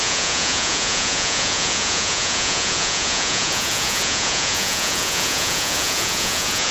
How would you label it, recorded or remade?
remade